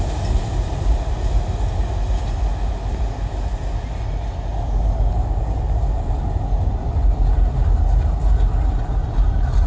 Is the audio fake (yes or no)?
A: no